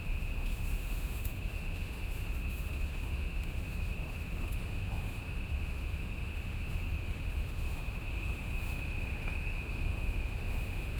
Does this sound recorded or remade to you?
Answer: remade